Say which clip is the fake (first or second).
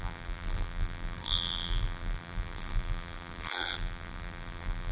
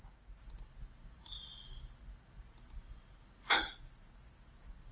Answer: first